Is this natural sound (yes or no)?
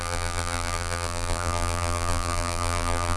no